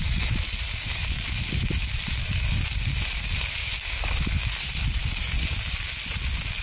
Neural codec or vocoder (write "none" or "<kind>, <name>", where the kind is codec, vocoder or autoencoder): none